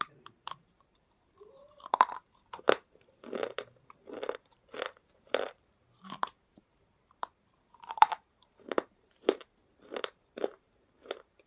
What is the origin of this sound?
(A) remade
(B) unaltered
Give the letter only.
A